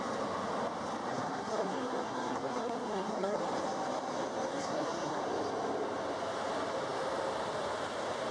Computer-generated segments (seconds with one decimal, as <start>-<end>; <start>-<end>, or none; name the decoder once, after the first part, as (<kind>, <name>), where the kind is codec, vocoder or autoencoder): 1.1-3.4 (codec, SNAC); 4.5-5.2